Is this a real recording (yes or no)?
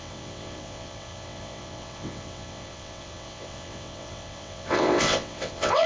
no